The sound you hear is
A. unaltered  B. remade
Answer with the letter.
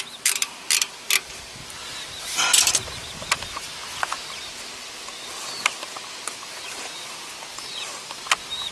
A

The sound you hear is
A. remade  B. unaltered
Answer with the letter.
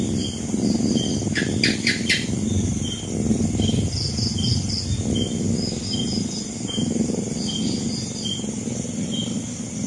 B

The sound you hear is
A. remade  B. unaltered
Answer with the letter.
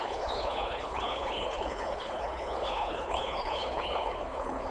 A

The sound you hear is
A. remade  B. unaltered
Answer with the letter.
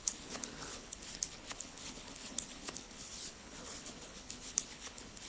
A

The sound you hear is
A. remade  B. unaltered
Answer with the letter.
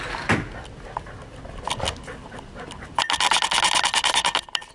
B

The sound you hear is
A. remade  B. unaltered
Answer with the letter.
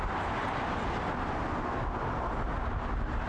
B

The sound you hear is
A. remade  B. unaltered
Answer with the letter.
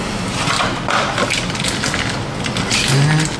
B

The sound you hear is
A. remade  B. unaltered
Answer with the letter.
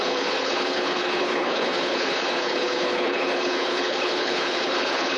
A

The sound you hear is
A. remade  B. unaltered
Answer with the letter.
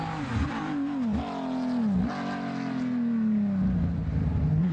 B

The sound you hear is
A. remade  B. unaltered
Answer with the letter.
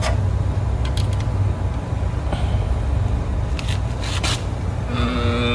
B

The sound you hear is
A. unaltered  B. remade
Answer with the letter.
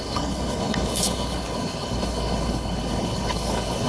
B